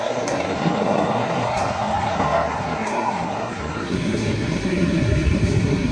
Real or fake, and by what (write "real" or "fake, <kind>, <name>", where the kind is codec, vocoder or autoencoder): fake, codec, SNAC